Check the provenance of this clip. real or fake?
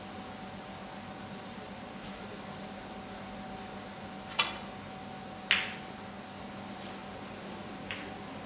real